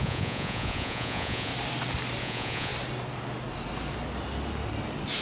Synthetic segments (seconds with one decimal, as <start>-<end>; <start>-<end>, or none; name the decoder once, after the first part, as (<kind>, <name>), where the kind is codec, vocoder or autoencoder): 0.0-1.5 (vocoder, Vocos); 2.2-2.7